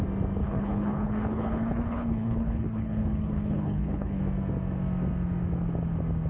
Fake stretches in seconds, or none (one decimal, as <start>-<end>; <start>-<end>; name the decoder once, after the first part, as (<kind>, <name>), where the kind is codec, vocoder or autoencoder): 0.4-4.2 (codec, HILCodec)